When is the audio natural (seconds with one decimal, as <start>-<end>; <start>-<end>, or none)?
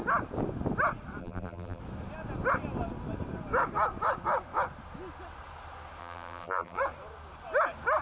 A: 0.0-1.2; 1.8-6.0; 6.8-8.0